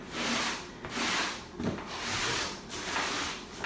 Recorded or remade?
recorded